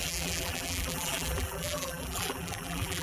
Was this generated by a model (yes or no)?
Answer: yes